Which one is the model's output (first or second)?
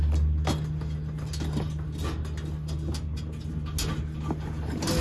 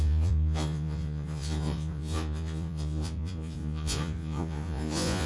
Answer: second